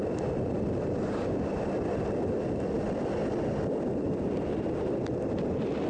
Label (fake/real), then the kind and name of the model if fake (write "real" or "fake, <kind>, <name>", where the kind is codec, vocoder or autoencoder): real